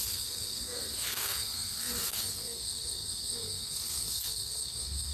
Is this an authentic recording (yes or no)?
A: no